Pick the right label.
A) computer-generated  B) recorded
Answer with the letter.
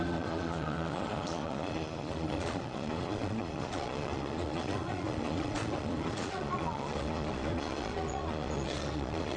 A